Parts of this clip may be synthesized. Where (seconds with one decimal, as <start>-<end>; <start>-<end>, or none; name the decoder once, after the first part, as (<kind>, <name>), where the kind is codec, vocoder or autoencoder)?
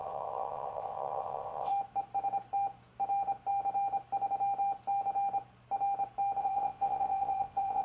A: 0.0-1.7 (vocoder, WaveNeXt); 6.4-7.8